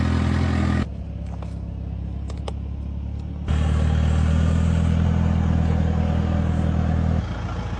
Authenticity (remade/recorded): recorded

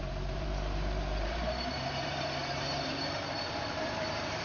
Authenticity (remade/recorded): remade